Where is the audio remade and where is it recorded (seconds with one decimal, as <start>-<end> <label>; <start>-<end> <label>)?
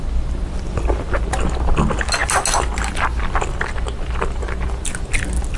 0.0-5.6 recorded